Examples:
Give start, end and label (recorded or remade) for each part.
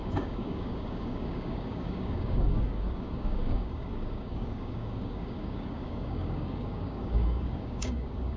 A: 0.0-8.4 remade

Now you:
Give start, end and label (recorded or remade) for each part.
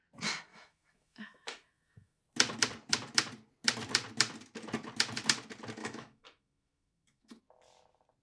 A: 0.0-0.5 recorded; 0.5-2.2 remade; 2.2-5.8 recorded; 5.8-7.4 remade; 7.4-8.2 recorded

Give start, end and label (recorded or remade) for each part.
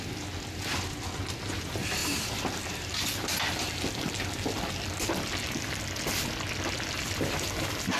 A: 0.0-8.0 recorded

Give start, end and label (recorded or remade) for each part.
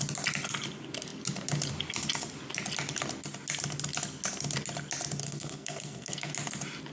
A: 0.0-5.2 recorded; 5.2-6.3 remade; 6.3-6.9 recorded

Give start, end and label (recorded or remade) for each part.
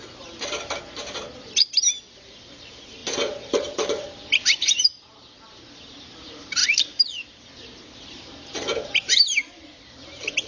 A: 0.0-1.0 remade; 1.0-2.1 recorded; 2.1-10.5 remade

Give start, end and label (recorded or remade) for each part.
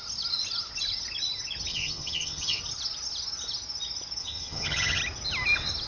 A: 0.0-1.7 recorded; 1.7-2.6 remade; 2.6-4.2 recorded; 4.2-5.0 remade; 5.0-5.9 recorded